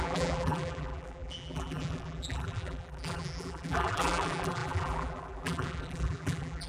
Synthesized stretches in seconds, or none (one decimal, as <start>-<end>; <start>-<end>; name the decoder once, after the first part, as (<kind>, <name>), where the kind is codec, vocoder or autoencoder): 0.0-6.7 (vocoder, BigVGAN v2)